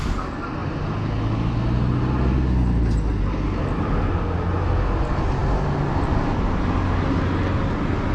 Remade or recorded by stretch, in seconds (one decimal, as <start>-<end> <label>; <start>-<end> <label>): 0.0-8.1 recorded